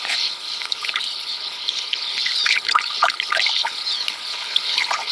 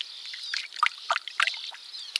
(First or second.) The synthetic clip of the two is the first